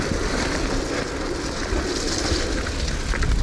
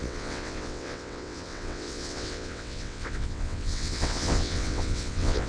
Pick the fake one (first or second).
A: second